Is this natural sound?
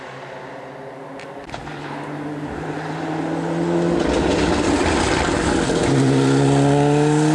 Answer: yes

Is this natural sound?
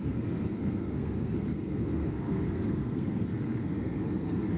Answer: no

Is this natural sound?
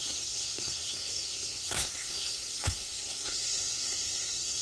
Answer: no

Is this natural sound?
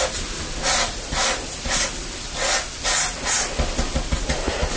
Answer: yes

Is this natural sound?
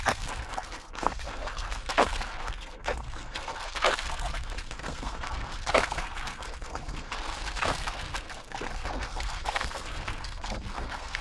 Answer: no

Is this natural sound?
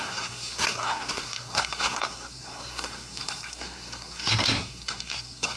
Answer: no